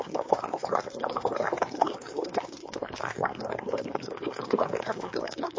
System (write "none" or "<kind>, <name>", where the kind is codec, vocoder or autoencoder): codec, SNAC